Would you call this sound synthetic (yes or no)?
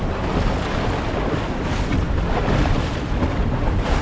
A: no